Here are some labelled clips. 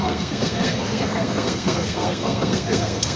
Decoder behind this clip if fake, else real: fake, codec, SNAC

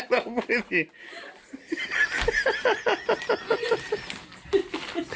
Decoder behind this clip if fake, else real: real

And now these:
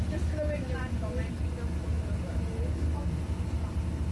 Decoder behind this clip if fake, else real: real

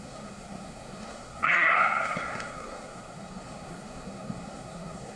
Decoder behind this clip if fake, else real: fake, codec, SNAC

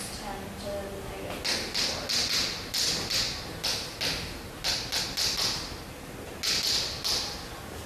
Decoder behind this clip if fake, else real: real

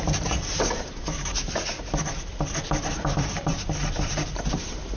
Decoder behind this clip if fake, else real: fake, vocoder, BigVGAN v2